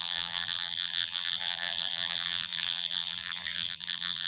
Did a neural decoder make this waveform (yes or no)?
yes